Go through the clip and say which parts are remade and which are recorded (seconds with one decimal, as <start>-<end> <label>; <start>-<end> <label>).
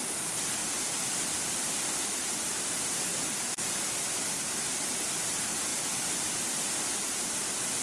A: 0.0-0.6 recorded; 0.6-1.6 remade; 1.6-3.1 recorded; 3.1-3.8 remade; 3.8-5.7 recorded; 5.7-6.3 remade; 6.3-7.8 recorded